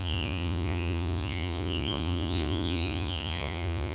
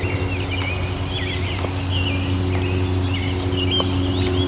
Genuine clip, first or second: second